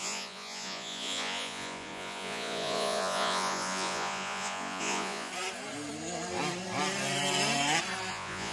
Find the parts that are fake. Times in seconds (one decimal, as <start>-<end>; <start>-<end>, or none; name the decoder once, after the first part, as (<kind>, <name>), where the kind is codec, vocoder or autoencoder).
0.0-5.3 (vocoder, Vocos); 8.1-8.5